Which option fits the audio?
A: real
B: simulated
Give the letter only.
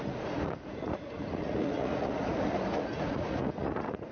B